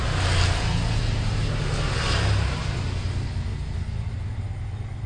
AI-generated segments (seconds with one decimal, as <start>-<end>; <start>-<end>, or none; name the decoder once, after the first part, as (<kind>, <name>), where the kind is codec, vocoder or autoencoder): none